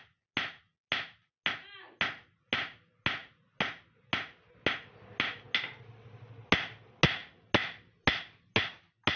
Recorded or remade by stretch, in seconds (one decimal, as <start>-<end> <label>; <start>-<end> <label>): 0.0-9.2 recorded